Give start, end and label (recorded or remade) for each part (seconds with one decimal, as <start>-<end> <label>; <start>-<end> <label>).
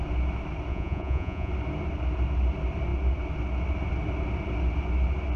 0.0-0.7 recorded; 0.7-1.5 remade; 1.5-5.4 recorded